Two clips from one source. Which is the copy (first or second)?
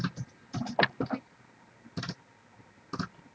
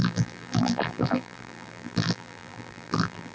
second